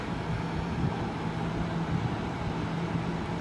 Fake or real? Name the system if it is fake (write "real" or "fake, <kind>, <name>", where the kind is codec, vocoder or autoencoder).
fake, vocoder, BigVGAN v2